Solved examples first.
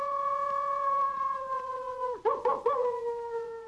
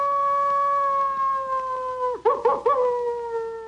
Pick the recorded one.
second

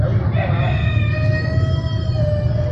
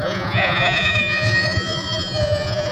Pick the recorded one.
first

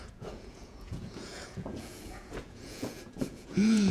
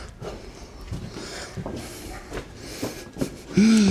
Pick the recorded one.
second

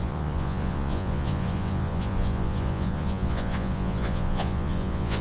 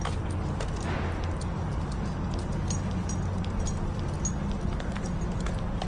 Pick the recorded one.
second